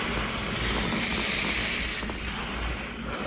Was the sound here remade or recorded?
recorded